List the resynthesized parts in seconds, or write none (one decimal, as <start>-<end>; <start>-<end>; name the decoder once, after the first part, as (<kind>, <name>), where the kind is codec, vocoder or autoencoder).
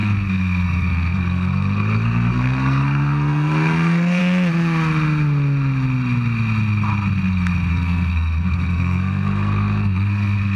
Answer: 0.0-4.2 (codec, SNAC); 7.7-10.6